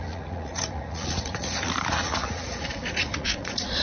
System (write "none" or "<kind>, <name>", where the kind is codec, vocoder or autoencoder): vocoder, Vocos